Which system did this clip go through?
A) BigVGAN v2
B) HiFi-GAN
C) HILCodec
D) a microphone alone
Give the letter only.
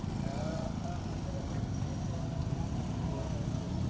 D